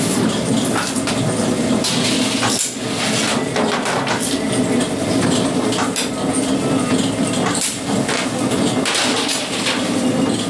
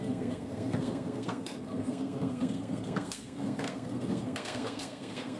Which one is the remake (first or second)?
second